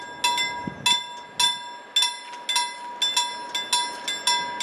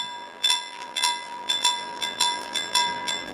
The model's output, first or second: second